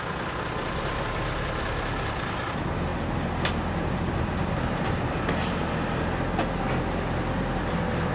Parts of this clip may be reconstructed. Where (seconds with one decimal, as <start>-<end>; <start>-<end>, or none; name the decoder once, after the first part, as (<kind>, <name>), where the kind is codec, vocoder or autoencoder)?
none